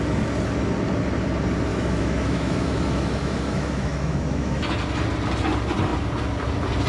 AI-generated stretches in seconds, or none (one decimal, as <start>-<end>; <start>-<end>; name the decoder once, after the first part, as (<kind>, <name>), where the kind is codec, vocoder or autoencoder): 1.7-4.6 (autoencoder, DAC-VAE)